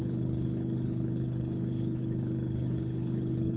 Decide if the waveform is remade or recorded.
remade